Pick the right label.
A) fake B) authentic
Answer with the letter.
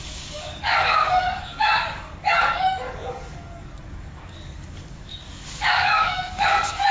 A